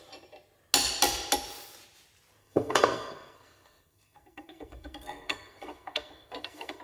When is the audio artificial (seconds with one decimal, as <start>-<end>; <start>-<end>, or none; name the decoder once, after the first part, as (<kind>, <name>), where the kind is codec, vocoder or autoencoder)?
2.4-6.8 (codec, SNAC)